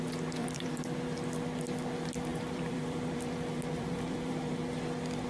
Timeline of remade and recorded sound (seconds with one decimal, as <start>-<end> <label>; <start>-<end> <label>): 0.0-0.4 recorded; 0.4-1.0 remade; 1.0-2.3 recorded; 2.3-4.4 remade; 4.4-5.3 recorded